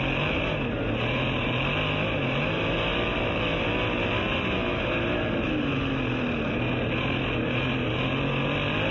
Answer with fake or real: real